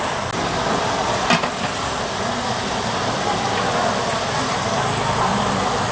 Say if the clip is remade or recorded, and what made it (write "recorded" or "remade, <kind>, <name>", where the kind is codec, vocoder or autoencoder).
recorded